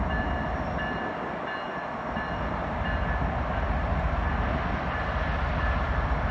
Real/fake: real